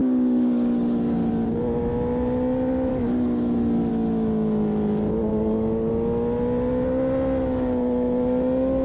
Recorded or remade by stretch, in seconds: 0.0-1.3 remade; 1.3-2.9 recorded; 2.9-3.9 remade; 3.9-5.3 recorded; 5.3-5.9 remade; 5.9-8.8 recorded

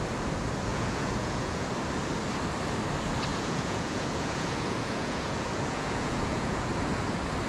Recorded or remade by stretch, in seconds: 0.0-0.7 recorded; 0.7-1.7 remade; 1.7-3.3 recorded; 3.3-6.7 remade; 6.7-7.5 recorded

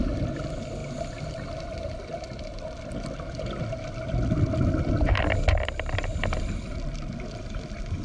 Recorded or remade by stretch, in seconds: 0.0-8.0 recorded

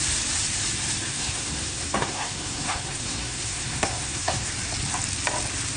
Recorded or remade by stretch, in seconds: 0.0-1.1 recorded; 1.1-4.5 remade; 4.5-5.8 recorded

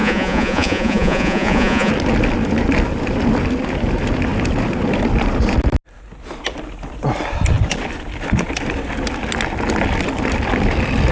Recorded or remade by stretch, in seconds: 0.0-1.9 remade; 1.9-11.1 recorded

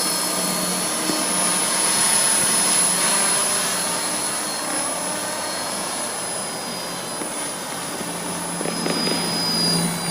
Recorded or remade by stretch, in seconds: 0.0-1.6 recorded; 1.6-2.3 remade; 2.3-5.2 recorded; 5.2-6.0 remade; 6.0-10.1 recorded

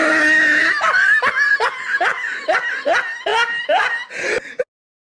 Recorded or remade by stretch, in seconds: 0.0-5.0 recorded